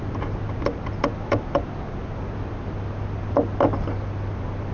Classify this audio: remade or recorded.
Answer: recorded